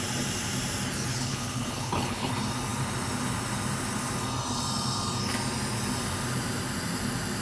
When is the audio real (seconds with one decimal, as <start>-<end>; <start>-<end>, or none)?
0.0-1.1; 2.3-7.4